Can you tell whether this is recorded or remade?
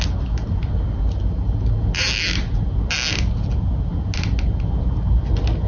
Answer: recorded